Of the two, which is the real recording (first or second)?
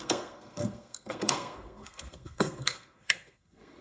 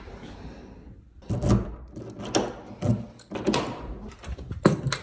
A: second